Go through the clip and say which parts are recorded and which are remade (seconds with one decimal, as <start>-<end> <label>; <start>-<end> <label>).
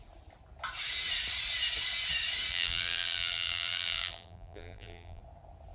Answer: 0.0-2.5 recorded; 2.5-5.2 remade; 5.2-5.7 recorded